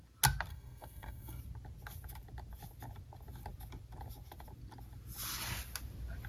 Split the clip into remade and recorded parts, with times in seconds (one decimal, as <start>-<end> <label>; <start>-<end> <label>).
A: 0.0-0.5 recorded; 0.5-1.4 remade; 1.4-6.3 recorded